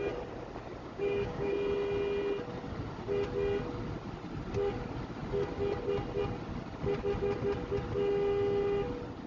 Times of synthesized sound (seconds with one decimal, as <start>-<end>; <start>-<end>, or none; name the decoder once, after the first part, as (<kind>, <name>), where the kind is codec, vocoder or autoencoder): 0.8-1.5 (codec, DAC)